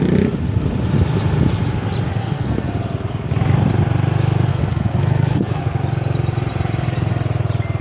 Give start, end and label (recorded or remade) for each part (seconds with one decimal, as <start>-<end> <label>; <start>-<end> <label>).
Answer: 0.0-2.2 recorded; 2.2-2.7 remade; 2.7-4.5 recorded; 4.5-5.6 remade; 5.6-7.8 recorded